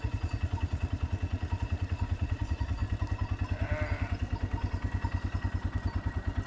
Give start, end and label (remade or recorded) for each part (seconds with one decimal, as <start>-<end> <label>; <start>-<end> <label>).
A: 0.0-2.8 remade; 2.8-6.5 recorded